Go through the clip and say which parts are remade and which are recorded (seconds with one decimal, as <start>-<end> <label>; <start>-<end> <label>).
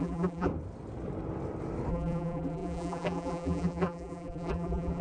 0.0-0.5 remade; 0.5-1.9 recorded; 1.9-5.0 remade